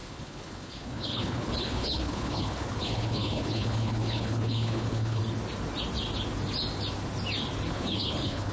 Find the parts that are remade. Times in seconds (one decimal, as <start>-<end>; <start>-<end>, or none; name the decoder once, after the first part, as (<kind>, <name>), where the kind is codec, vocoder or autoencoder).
0.0-5.2 (codec, HILCodec); 7.7-8.5